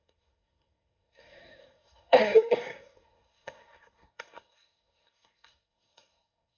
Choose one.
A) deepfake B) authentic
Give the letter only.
A